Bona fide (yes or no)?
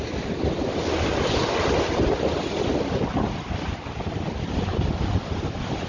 yes